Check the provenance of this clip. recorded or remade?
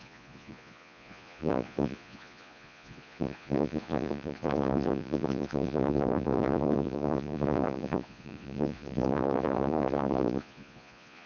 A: remade